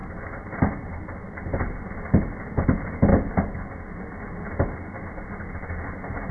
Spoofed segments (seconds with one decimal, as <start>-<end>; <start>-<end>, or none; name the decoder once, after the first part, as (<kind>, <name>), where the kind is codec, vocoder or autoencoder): none